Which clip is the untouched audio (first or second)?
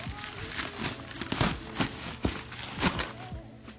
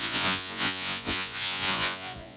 first